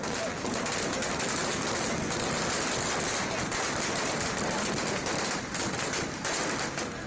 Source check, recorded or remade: recorded